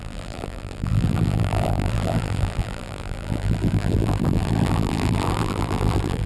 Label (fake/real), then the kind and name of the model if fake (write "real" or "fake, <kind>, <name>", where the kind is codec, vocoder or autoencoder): fake, vocoder, BigVGAN v2